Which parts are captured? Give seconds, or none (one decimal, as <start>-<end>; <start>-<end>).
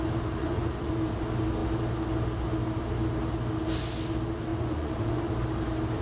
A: 0.0-0.4; 0.9-4.5; 5.3-6.0